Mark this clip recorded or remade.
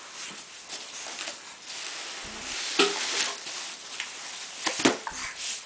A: recorded